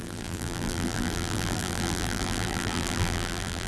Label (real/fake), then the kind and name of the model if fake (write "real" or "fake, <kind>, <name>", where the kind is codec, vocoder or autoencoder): fake, vocoder, BigVGAN v2